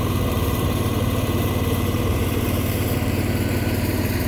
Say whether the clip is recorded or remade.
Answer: remade